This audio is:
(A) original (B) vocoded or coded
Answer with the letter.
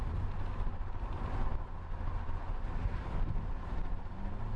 B